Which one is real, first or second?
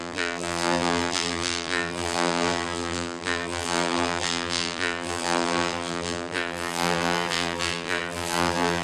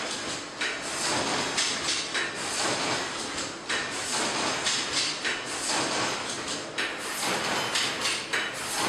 second